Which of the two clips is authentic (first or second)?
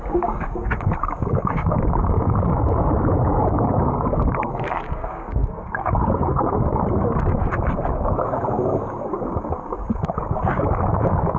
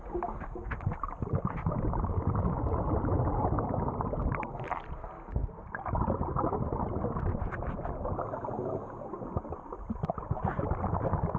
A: second